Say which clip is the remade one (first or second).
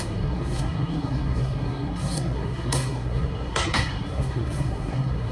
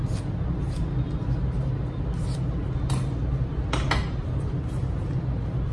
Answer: first